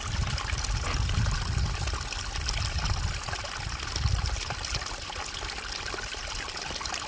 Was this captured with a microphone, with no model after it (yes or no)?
yes